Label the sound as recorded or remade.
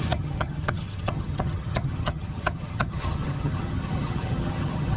remade